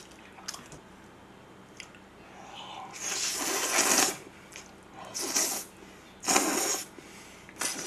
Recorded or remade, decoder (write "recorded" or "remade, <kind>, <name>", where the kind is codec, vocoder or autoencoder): recorded